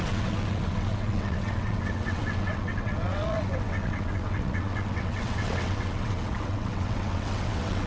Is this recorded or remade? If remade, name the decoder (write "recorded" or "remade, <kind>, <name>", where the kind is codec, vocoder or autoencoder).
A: remade, vocoder, WaveNeXt